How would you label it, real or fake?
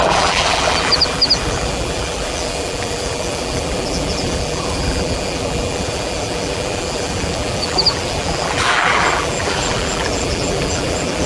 fake